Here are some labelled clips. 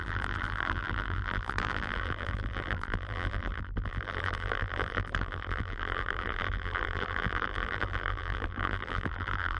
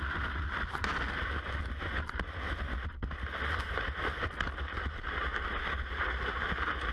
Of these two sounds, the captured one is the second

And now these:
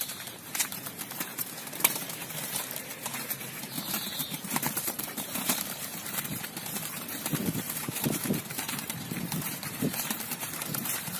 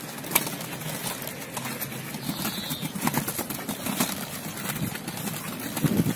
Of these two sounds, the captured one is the second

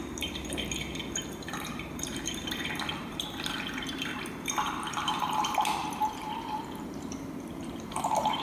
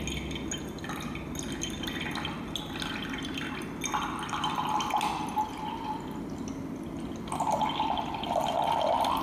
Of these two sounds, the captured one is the second